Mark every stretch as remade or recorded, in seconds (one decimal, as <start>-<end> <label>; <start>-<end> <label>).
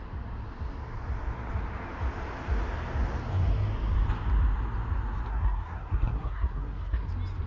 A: 0.0-5.3 recorded; 5.3-7.1 remade; 7.1-7.5 recorded